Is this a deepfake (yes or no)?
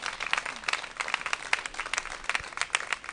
no